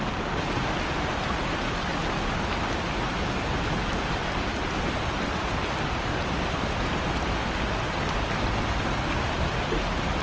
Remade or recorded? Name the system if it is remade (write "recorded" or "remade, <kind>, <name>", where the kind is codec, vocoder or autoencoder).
recorded